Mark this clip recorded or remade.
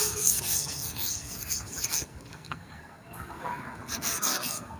remade